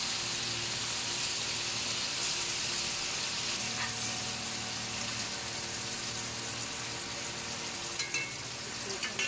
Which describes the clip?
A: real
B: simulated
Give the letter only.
A